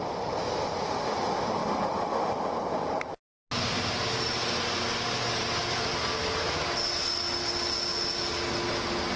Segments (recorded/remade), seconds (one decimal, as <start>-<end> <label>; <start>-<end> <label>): 0.0-9.2 recorded